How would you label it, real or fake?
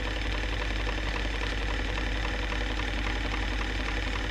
real